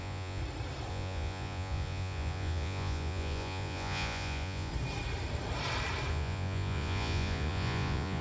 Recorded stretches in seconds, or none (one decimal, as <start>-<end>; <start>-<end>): 0.4-0.9; 4.7-6.1